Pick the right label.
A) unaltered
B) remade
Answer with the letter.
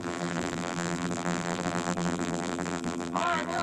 B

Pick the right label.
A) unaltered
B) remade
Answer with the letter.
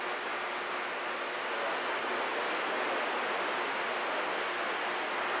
A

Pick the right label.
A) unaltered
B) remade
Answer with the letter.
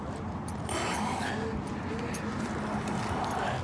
A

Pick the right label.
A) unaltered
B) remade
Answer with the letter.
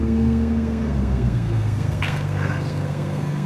B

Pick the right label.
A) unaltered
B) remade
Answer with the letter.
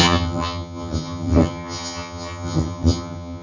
B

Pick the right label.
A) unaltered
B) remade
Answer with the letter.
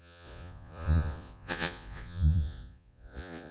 B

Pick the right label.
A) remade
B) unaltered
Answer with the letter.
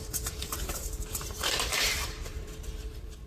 A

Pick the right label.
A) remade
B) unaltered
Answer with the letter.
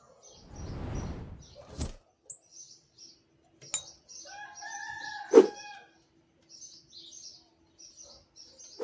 B